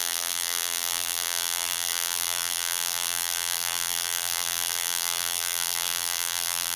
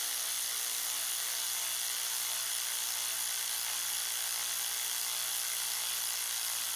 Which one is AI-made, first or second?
first